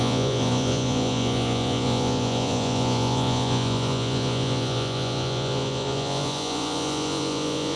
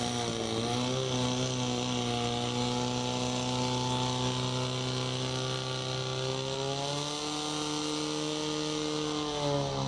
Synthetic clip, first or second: first